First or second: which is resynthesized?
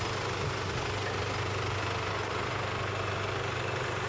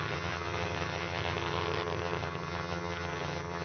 second